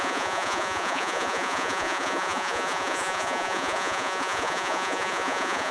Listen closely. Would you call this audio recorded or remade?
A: remade